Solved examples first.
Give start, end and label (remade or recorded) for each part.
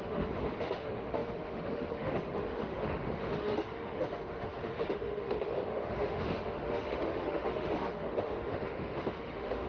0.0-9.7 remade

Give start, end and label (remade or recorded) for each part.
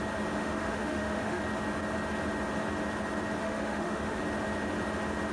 0.0-0.4 recorded; 0.4-1.4 remade; 1.4-3.4 recorded; 3.4-4.2 remade; 4.2-5.3 recorded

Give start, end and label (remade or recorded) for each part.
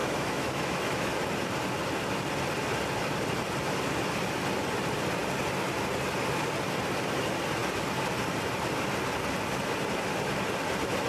0.0-1.1 remade; 1.1-11.1 recorded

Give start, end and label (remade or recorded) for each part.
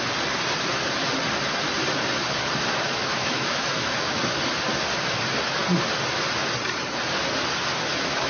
0.0-3.0 recorded; 3.0-4.2 remade; 4.2-8.3 recorded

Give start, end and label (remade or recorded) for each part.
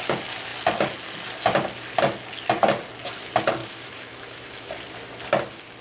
0.0-3.6 recorded; 3.6-4.7 remade; 4.7-5.8 recorded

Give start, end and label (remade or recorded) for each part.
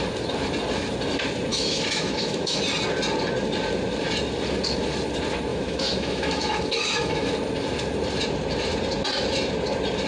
0.0-1.5 recorded; 1.5-2.6 remade; 2.6-5.5 recorded; 5.5-7.3 remade; 7.3-10.1 recorded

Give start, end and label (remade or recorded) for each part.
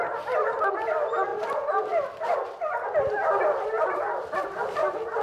0.0-5.2 recorded